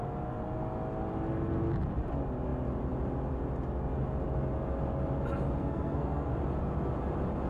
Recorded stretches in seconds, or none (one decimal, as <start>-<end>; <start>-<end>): 0.0-5.6; 6.3-7.5